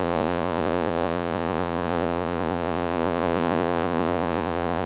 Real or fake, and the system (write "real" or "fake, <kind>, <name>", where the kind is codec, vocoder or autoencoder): fake, vocoder, Vocos